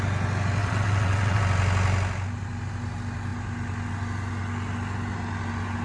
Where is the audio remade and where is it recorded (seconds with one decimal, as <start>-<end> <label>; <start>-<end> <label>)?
0.0-0.6 recorded; 0.6-1.4 remade; 1.4-5.8 recorded